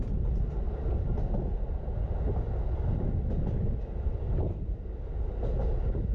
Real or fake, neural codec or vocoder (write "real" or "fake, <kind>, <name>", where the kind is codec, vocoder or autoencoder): real